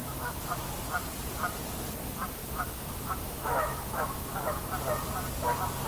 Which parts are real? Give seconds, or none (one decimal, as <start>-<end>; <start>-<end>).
0.7-2.4; 4.7-5.9